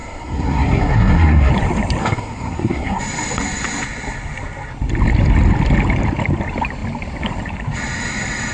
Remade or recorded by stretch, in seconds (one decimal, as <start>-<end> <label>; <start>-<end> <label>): 0.0-1.5 remade; 1.5-2.0 recorded; 2.0-3.0 remade; 3.0-8.5 recorded